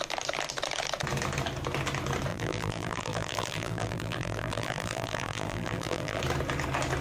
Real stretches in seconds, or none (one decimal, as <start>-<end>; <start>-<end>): 0.0-2.3; 6.2-7.0